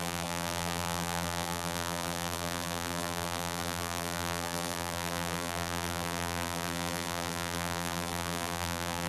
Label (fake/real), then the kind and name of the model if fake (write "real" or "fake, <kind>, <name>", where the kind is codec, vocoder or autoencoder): fake, vocoder, BigVGAN v2